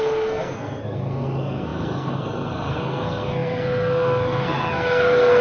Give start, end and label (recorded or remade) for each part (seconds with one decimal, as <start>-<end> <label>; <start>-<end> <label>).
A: 0.0-5.4 remade